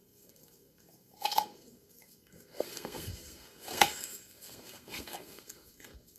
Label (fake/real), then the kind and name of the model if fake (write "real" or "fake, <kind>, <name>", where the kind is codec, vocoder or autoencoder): fake, codec, SNAC